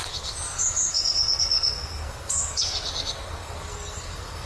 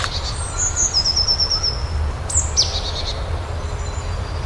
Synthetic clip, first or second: first